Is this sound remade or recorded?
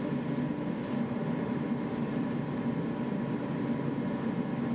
remade